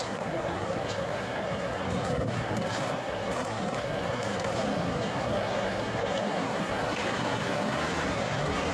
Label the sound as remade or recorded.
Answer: remade